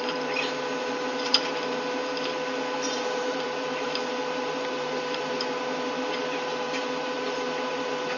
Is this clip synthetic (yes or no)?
yes